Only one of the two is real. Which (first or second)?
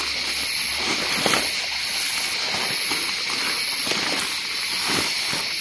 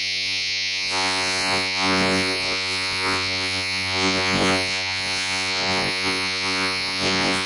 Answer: first